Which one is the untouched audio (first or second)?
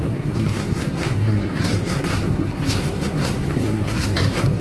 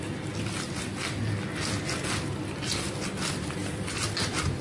second